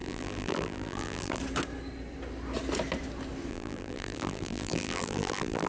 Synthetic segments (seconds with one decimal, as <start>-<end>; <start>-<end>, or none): 0.0-1.4; 3.5-5.7